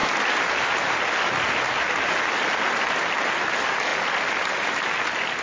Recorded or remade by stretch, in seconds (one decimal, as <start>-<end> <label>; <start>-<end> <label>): 0.0-5.4 recorded